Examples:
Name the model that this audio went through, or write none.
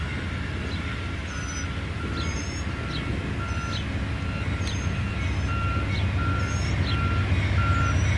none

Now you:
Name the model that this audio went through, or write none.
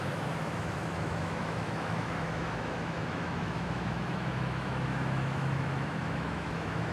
autoencoder, DAC-VAE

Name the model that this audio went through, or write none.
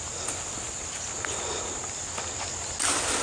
none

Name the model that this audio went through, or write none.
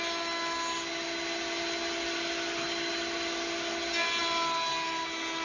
none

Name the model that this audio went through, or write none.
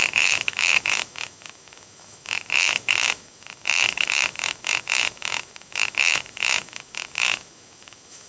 autoencoder, DAC-VAE